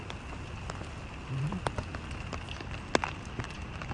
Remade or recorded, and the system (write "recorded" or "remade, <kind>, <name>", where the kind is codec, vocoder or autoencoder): recorded